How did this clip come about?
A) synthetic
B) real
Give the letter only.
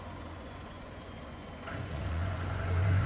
A